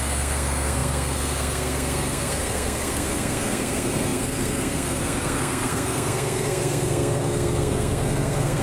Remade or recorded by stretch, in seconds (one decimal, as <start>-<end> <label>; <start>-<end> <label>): 0.0-8.6 remade